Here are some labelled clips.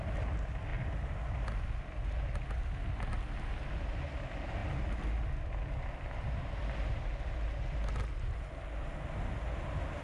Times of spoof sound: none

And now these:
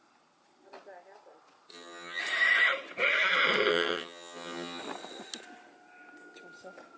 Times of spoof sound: 1.7-2.2; 3.7-4.8

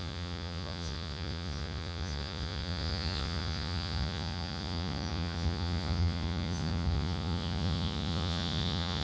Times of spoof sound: 0.0-9.0

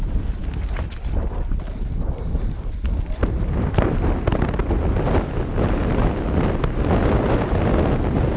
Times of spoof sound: none

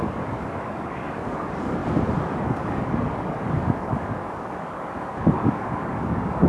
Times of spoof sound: 0.0-1.8; 2.4-6.5

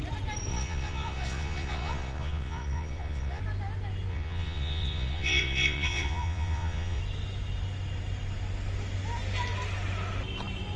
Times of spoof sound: 0.5-3.4; 4.1-7.0

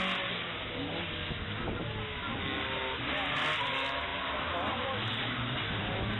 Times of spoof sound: none